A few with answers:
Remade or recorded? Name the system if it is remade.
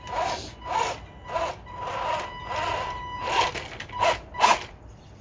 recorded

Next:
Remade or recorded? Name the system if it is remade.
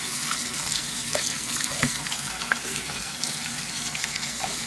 remade, codec, SNAC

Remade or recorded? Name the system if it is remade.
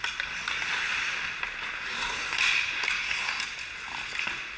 recorded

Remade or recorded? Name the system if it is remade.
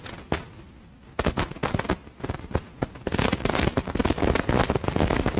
recorded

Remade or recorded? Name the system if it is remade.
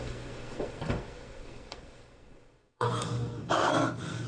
remade, codec, SNAC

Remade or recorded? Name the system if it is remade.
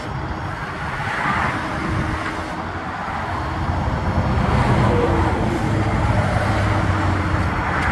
recorded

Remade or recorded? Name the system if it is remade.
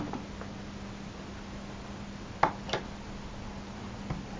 recorded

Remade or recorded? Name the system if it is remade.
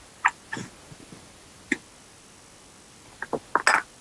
recorded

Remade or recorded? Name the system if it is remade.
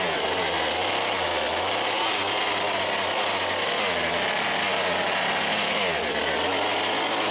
recorded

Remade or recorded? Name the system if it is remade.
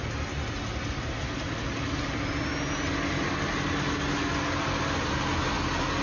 recorded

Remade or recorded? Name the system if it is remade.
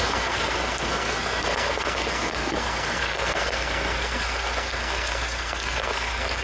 remade, codec, SNAC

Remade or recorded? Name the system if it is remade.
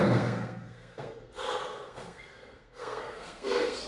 remade, codec, SNAC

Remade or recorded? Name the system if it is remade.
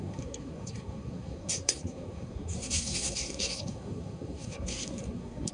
remade, codec, SNAC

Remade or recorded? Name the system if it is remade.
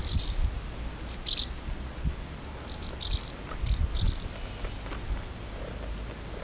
recorded